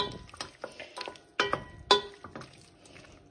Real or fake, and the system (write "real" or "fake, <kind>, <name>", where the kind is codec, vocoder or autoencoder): real